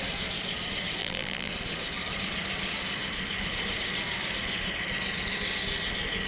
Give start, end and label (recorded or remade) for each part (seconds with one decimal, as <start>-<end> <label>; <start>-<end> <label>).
0.0-1.0 recorded; 1.0-1.5 remade; 1.5-6.3 recorded